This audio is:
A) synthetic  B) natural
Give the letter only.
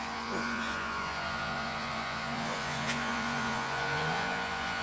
A